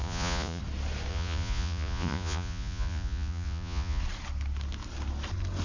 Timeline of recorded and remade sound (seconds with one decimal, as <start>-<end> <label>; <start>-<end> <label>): 0.0-0.6 remade; 0.6-1.1 recorded; 1.1-4.0 remade; 4.0-5.6 recorded